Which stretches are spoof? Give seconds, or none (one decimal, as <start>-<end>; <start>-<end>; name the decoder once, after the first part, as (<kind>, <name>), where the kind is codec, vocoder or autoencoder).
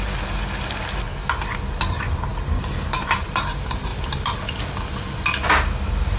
none